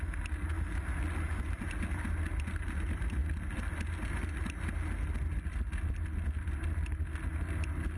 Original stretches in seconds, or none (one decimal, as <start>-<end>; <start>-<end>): 0.0-8.0